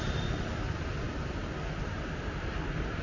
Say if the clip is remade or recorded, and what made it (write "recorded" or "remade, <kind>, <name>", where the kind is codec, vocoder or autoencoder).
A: recorded